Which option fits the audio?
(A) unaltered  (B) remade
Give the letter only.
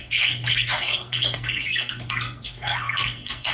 B